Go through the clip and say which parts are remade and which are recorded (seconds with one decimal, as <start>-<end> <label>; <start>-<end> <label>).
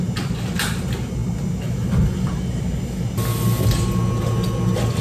0.0-5.0 recorded